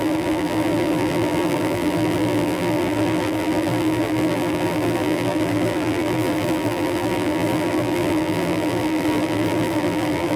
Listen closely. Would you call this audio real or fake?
fake